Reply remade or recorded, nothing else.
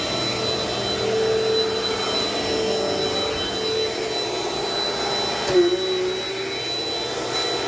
recorded